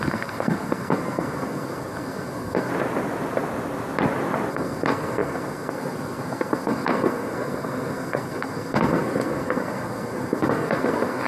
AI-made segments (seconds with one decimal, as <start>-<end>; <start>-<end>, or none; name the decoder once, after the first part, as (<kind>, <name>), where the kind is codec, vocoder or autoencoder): 0.0-2.7 (codec, SNAC); 4.5-11.3